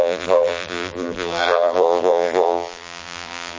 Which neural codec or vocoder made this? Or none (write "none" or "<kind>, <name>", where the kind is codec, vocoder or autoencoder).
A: vocoder, BigVGAN v2